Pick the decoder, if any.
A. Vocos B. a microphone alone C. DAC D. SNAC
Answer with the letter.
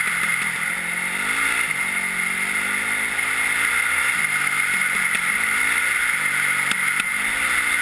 B